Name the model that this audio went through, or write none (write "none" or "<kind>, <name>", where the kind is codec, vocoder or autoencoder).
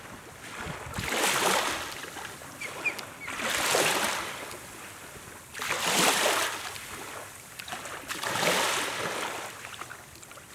none